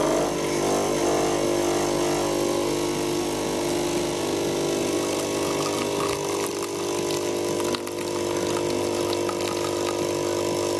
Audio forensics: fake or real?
real